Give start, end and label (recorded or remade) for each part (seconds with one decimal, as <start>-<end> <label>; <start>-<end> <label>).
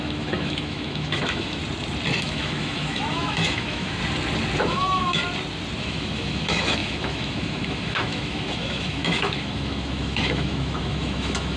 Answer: 0.0-1.6 remade; 1.6-2.2 recorded; 2.2-4.0 remade; 4.0-4.6 recorded; 4.6-5.2 remade; 5.2-5.8 recorded; 5.8-11.6 remade